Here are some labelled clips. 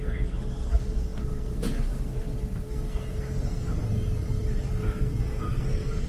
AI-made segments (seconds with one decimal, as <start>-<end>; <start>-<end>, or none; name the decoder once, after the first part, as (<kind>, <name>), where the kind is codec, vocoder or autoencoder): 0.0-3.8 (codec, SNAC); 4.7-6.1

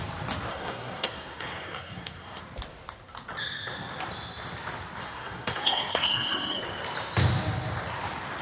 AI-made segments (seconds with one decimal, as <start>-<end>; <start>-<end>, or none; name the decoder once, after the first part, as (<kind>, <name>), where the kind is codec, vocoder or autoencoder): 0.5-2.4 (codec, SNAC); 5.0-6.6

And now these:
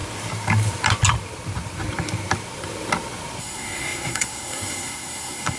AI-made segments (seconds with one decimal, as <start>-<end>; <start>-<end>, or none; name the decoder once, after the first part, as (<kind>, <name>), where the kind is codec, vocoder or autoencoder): 3.4-5.6 (codec, SNAC)

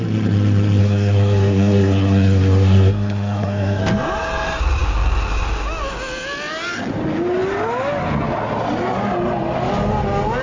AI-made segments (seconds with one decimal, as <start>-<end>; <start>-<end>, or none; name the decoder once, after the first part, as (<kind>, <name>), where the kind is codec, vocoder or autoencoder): 0.8-3.8 (codec, SNAC)